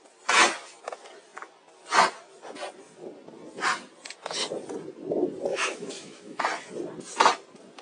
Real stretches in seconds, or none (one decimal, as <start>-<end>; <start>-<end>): 0.0-5.5; 6.4-7.8